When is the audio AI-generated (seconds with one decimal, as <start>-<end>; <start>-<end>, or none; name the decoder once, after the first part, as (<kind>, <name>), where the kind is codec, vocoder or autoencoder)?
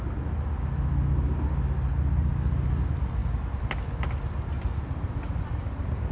none